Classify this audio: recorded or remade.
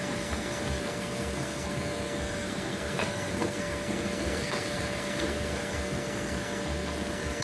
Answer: remade